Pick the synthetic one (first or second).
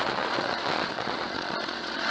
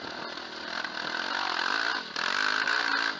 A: first